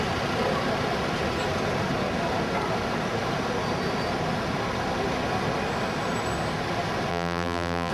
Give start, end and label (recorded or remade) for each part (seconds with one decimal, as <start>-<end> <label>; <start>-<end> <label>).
0.0-7.1 recorded; 7.1-7.9 remade